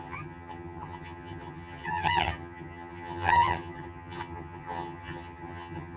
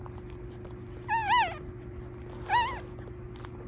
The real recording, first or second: second